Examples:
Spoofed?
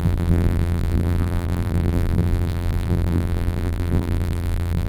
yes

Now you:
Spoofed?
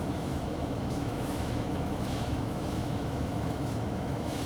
yes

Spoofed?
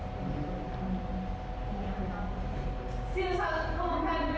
no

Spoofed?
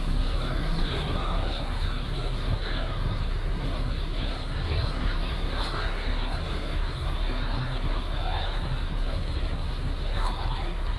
yes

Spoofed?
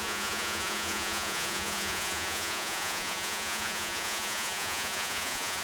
yes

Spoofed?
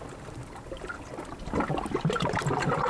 yes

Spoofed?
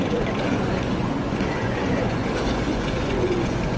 yes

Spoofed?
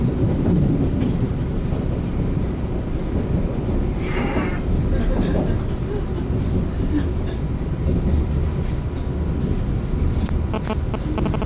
no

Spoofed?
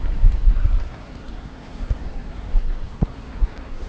yes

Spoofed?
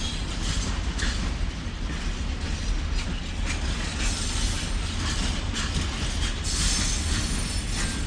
no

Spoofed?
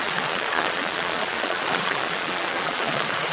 yes